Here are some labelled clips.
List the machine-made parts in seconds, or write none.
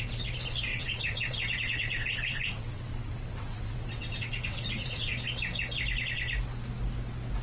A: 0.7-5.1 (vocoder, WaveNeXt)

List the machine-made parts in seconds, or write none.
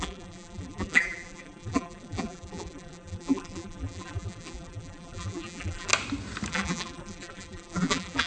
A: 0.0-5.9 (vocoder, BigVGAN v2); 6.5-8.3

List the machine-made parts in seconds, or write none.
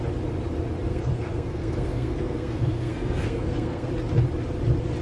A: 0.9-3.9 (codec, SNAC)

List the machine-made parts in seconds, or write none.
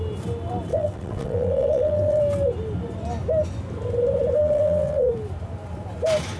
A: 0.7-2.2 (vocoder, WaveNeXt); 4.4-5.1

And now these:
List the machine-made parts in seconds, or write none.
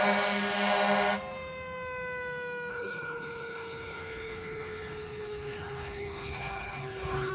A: 2.7-7.3 (codec, HILCodec)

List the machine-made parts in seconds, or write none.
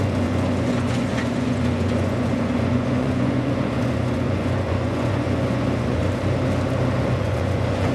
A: 0.0-6.0 (vocoder, Vocos); 7.0-7.9